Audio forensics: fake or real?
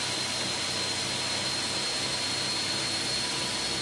real